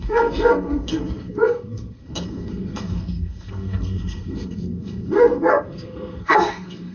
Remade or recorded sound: remade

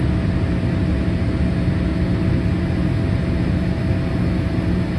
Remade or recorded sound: recorded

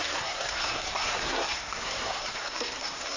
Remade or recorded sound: remade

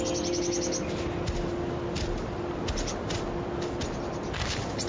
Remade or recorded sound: recorded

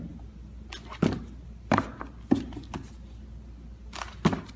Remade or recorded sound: recorded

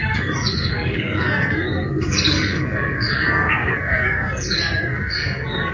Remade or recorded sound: remade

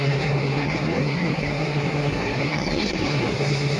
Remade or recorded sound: remade